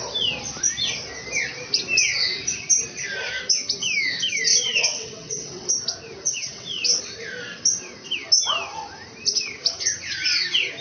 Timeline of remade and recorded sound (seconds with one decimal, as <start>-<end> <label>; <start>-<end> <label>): 0.0-4.5 recorded; 4.5-5.7 remade; 5.7-6.3 recorded; 6.3-7.0 remade; 7.0-10.8 recorded